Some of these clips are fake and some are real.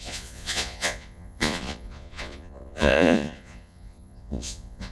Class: fake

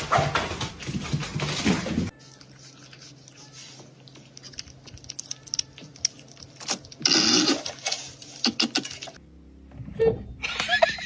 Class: real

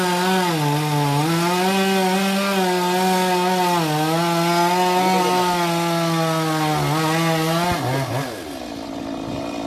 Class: real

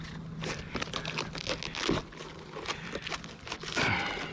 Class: real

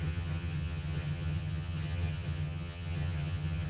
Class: fake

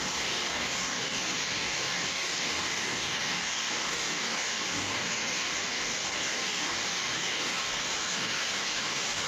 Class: fake